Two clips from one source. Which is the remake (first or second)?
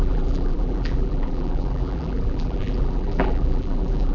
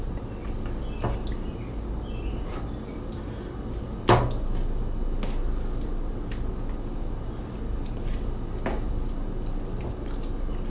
first